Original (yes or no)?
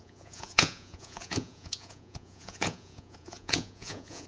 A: no